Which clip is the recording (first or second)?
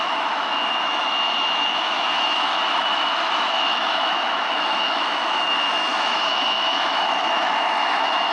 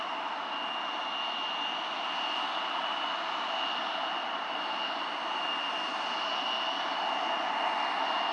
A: second